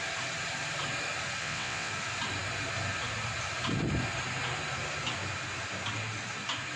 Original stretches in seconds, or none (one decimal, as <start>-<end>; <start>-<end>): 0.0-1.4; 1.9-6.8